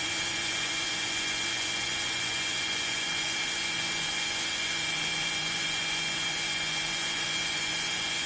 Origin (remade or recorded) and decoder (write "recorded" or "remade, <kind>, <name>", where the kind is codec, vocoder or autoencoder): remade, vocoder, Vocos